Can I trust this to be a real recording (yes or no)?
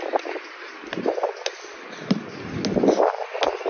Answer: yes